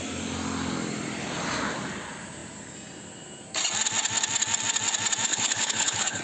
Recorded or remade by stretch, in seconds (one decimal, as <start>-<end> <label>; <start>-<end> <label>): 0.0-5.3 recorded; 5.3-6.2 remade